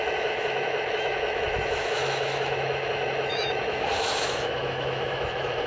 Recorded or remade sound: remade